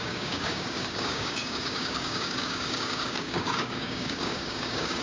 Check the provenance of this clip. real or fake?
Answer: fake